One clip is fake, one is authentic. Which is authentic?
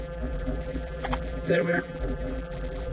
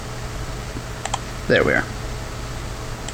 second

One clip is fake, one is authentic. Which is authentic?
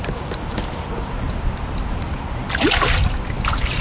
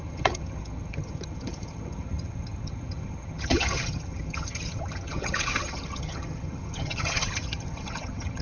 first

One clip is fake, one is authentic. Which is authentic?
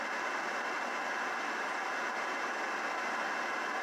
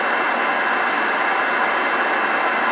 second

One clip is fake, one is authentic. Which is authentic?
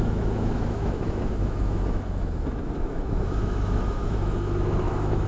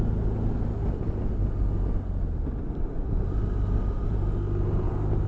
second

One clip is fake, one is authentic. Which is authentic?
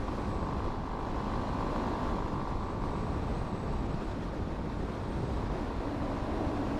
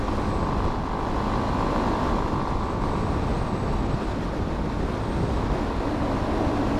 second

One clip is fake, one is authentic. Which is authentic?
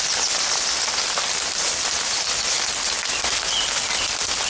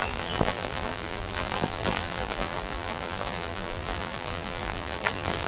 first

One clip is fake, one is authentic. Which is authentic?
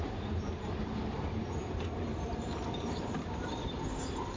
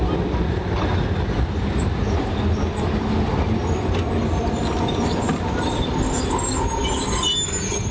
second